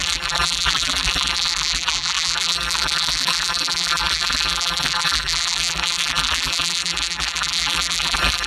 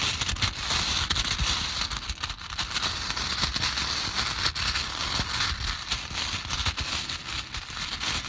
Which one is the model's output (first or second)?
first